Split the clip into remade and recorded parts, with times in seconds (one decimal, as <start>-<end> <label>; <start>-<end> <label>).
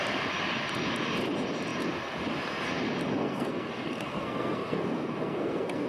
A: 0.0-3.2 recorded; 3.2-5.9 remade